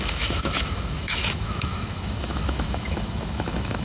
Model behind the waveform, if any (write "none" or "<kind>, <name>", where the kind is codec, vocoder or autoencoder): autoencoder, DAC-VAE